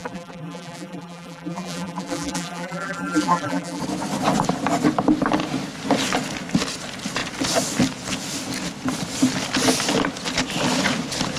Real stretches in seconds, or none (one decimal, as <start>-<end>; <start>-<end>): 3.8-11.4